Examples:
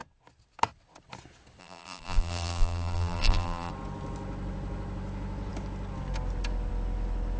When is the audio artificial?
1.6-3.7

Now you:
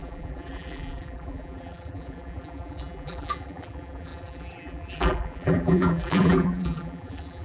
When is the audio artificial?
0.0-7.4

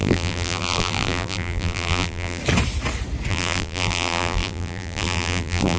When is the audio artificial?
0.0-2.4; 3.3-5.8

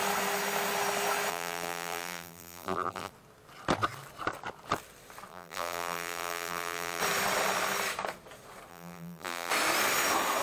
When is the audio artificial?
1.3-3.1; 5.3-7.0; 8.7-9.5

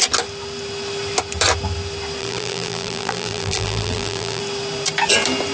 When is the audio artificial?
2.2-4.4